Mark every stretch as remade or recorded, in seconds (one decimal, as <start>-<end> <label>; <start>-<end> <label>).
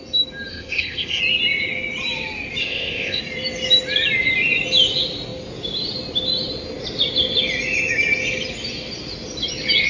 0.0-0.5 recorded; 0.5-1.2 remade; 1.2-2.6 recorded; 2.6-3.2 remade; 3.2-9.9 recorded